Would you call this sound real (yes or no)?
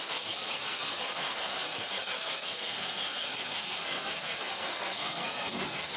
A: no